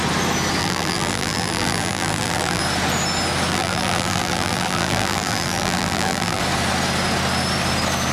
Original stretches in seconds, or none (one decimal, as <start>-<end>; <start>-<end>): 0.0-0.6; 2.6-3.5; 6.4-8.1